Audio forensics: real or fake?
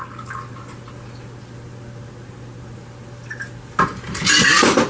real